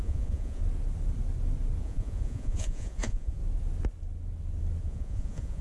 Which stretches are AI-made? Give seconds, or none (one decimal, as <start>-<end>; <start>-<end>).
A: 0.0-0.6; 1.8-3.4; 4.8-5.6